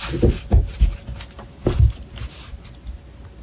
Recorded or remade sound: recorded